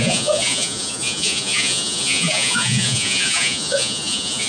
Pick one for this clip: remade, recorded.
remade